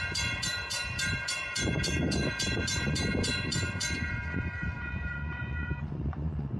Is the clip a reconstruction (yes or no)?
yes